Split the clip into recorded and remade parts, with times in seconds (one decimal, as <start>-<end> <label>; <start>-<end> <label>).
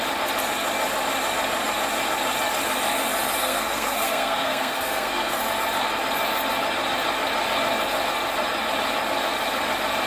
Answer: 0.0-3.4 recorded; 3.4-5.4 remade; 5.4-10.1 recorded